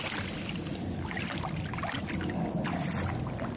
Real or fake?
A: real